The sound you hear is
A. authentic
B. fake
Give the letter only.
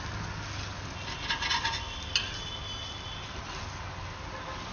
A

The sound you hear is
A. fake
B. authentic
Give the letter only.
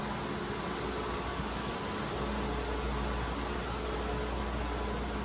B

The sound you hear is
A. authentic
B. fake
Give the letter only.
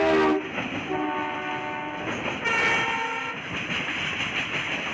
A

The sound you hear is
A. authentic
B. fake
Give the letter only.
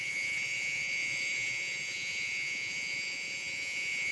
B